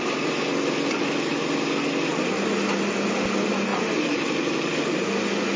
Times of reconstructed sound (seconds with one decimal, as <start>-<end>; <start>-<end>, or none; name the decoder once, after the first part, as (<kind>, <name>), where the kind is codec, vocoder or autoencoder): 3.7-4.7 (vocoder, BigVGAN v2)